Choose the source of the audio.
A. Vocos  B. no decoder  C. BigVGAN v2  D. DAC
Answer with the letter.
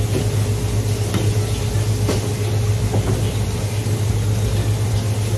B